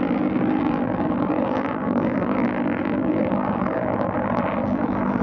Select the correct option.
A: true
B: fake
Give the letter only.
B